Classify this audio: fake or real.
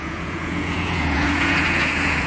fake